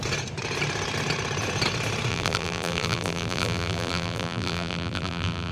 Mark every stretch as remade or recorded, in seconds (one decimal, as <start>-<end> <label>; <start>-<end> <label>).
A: 0.0-2.1 recorded; 2.1-5.5 remade